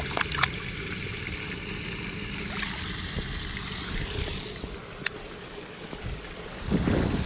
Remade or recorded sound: recorded